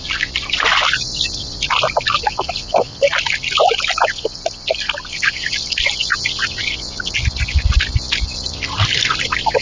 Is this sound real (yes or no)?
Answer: yes